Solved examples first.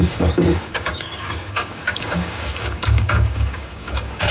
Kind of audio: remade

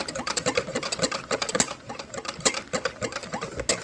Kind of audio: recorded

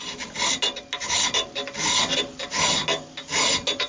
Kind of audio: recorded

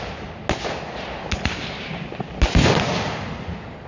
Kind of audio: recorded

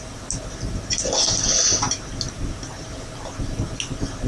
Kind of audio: recorded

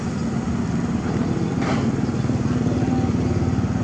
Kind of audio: recorded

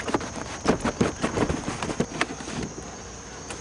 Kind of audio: recorded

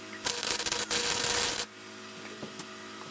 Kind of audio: recorded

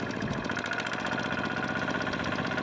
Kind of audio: recorded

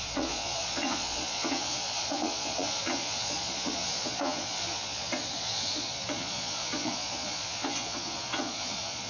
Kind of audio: remade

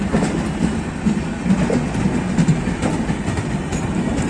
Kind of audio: recorded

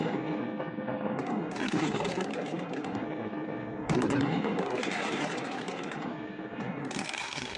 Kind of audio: remade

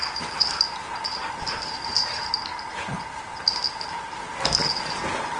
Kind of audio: recorded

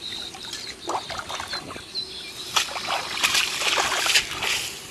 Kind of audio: recorded